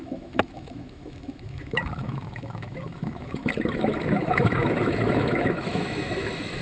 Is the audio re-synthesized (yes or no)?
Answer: yes